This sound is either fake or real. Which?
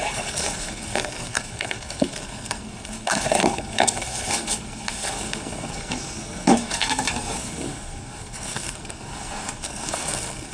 fake